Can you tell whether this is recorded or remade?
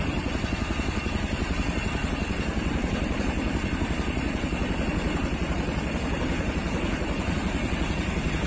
recorded